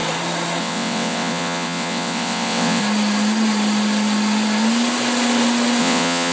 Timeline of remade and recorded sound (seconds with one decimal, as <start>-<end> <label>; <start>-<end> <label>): 0.0-0.6 recorded; 0.6-2.8 remade; 2.8-5.8 recorded; 5.8-6.3 remade